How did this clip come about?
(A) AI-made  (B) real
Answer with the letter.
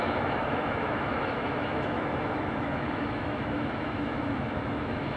A